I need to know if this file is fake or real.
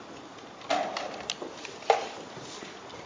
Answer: real